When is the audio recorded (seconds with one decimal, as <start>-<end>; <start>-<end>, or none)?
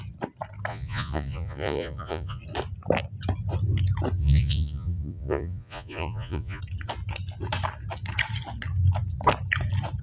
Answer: 0.0-0.7; 2.4-4.2; 6.6-10.0